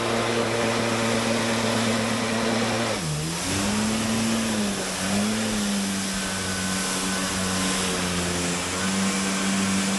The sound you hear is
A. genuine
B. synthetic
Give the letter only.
A